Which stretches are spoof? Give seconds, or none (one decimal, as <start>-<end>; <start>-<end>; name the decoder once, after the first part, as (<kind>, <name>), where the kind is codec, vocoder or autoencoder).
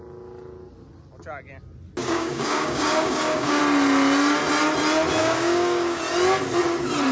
2.0-3.6 (codec, DAC); 5.2-6.0